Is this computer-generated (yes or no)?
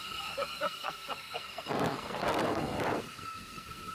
yes